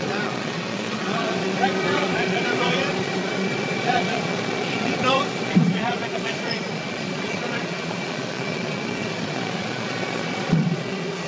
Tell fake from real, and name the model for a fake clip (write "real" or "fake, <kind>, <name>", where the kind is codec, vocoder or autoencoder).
fake, vocoder, Vocos